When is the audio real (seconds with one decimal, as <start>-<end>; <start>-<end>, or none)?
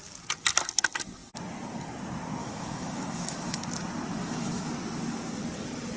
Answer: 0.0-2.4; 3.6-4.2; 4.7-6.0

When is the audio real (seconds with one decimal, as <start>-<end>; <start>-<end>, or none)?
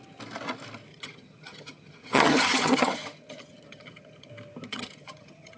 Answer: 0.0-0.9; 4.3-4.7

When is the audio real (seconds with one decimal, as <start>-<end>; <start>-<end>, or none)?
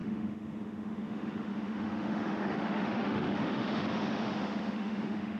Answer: none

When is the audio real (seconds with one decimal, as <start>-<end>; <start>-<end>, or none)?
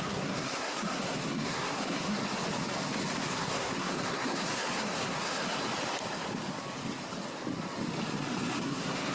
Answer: 2.2-3.2; 5.6-8.6